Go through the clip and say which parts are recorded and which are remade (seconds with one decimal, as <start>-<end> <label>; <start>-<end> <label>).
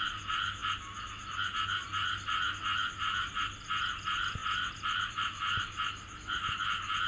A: 0.0-7.1 recorded